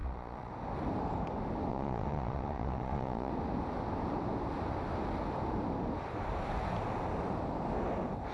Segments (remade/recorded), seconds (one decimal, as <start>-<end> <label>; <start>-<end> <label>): 0.0-0.5 remade; 0.5-1.7 recorded; 1.7-3.3 remade; 3.3-8.3 recorded